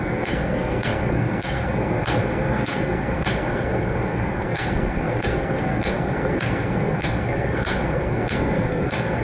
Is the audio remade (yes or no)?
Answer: yes